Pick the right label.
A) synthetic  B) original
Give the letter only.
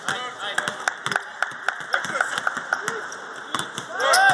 B